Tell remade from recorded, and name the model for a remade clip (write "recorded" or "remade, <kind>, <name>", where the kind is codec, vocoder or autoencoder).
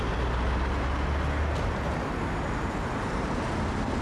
recorded